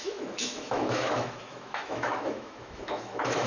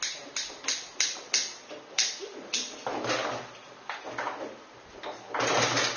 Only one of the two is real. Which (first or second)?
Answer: second